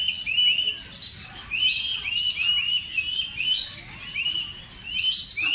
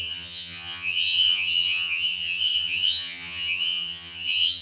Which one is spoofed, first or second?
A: second